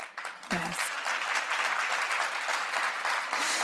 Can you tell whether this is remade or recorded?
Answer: recorded